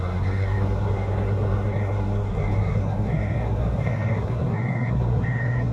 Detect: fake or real fake